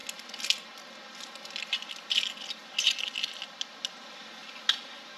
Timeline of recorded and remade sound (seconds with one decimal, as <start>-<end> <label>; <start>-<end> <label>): 0.0-5.2 recorded